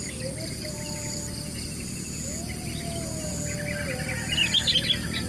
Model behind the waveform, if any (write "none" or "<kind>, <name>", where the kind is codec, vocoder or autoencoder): none